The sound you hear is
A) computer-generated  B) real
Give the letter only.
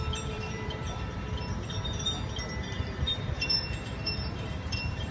A